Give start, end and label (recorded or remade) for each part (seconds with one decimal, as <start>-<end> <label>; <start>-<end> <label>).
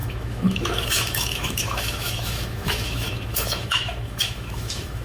0.0-5.0 remade